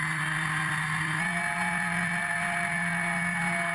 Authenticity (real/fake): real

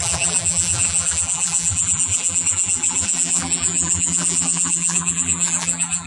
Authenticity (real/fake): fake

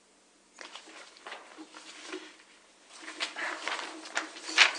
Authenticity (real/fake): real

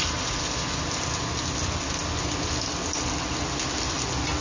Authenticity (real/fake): real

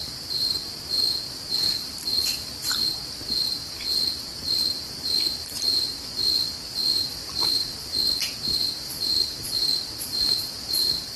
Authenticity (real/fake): fake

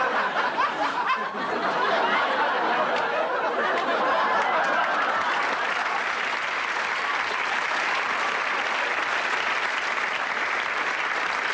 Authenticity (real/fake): real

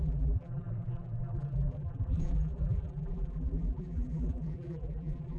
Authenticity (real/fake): fake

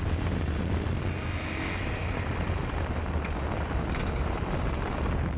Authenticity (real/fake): real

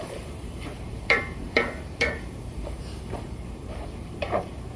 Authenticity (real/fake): fake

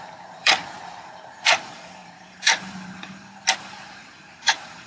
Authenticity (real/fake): fake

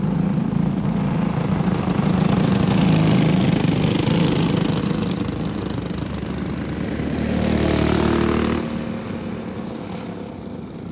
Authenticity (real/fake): real